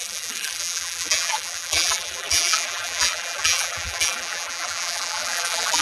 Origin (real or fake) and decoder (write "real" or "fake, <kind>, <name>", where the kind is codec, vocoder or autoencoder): fake, vocoder, BigVGAN v2